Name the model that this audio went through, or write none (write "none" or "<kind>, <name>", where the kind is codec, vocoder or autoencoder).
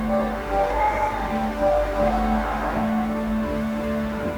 autoencoder, DAC-VAE